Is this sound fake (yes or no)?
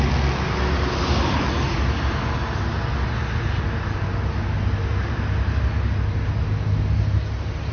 no